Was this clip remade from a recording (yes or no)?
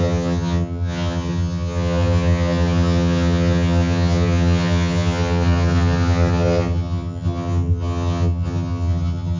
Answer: yes